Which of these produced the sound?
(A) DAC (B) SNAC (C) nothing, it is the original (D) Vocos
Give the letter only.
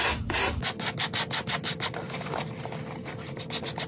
C